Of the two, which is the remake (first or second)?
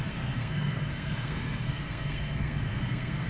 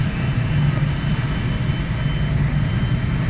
first